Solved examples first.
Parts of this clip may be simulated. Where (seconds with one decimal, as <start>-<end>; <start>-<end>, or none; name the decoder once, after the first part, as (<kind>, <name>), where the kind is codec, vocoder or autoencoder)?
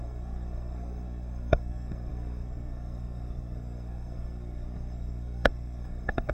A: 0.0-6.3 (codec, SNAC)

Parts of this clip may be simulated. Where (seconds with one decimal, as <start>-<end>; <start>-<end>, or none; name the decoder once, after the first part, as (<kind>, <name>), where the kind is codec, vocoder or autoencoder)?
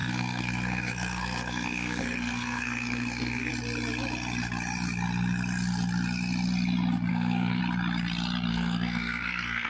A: 0.0-3.5 (codec, SNAC); 7.1-7.6; 8.5-9.7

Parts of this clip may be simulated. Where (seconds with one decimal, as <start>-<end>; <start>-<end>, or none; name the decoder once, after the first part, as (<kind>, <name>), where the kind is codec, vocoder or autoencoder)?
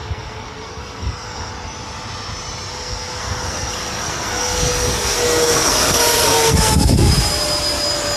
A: 0.0-1.5 (codec, SNAC); 2.7-7.1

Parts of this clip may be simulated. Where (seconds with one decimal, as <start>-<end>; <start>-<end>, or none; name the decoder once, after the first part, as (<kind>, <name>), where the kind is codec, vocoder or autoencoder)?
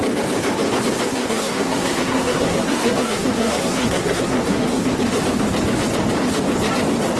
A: 1.1-4.8 (codec, SNAC)